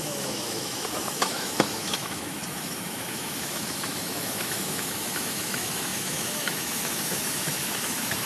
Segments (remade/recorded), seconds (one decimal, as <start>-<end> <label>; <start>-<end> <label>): 0.0-8.3 remade